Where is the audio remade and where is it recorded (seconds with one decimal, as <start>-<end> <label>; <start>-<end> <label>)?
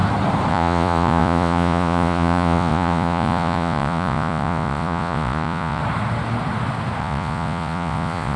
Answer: 0.0-0.5 recorded; 0.5-5.8 remade; 5.8-7.0 recorded; 7.0-8.4 remade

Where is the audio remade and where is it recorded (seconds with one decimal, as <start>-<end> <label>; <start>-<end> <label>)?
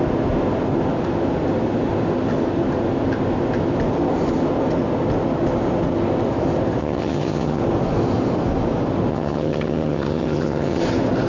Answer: 0.0-6.8 recorded; 6.8-7.6 remade; 7.6-9.1 recorded; 9.1-10.8 remade; 10.8-11.3 recorded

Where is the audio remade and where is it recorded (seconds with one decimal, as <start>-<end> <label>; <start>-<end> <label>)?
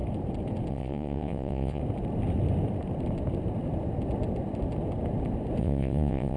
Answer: 0.0-0.7 recorded; 0.7-1.8 remade; 1.8-5.6 recorded; 5.6-6.4 remade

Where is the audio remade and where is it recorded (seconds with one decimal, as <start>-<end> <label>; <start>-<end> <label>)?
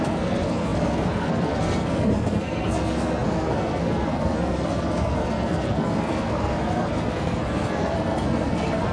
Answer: 0.0-8.9 remade